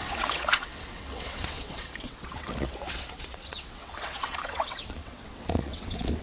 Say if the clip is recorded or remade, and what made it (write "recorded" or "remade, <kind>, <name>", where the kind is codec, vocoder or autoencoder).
remade, vocoder, WaveNeXt